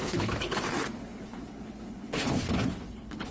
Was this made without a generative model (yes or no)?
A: no